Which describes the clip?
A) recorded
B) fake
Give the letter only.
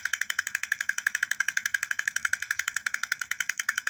B